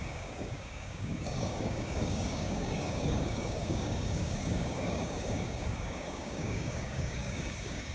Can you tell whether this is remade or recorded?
remade